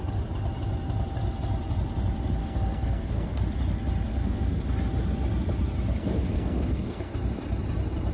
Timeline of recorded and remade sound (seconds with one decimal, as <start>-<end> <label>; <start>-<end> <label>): 0.0-2.4 recorded; 2.4-3.4 remade; 3.4-4.1 recorded; 4.1-4.6 remade; 4.6-6.0 recorded; 6.0-7.1 remade; 7.1-8.1 recorded